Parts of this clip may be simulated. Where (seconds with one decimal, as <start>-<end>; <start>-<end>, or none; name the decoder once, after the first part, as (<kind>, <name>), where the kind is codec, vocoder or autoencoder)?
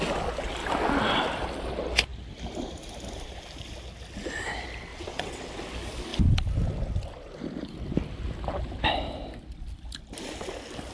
4.9-5.6 (vocoder, WaveNeXt)